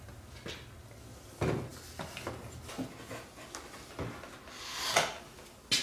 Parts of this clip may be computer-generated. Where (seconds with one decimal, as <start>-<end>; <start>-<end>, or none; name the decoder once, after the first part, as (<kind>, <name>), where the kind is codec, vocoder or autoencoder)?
none